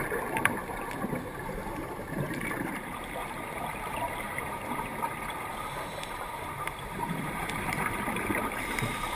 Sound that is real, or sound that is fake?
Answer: fake